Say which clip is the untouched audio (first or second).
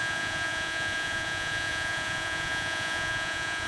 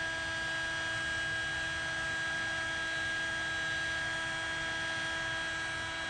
second